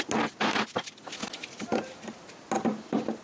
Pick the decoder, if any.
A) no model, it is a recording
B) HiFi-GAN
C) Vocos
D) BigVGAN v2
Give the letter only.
A